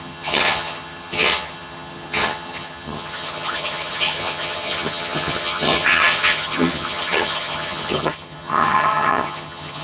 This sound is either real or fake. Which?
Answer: fake